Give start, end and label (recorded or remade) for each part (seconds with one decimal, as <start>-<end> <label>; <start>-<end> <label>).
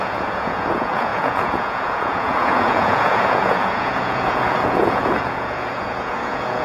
0.0-6.6 remade